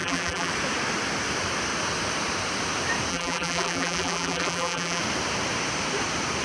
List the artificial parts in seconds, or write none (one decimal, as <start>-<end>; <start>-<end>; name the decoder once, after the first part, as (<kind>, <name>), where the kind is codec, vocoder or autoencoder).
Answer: 0.0-0.5 (vocoder, BigVGAN v2); 3.1-5.0